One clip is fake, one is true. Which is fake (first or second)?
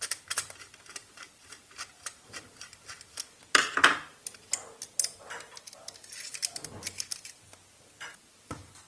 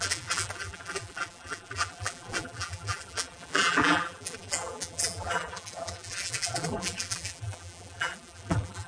second